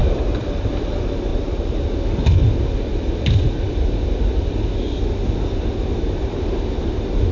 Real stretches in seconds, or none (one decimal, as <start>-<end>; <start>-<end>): 0.0-1.3; 1.9-7.3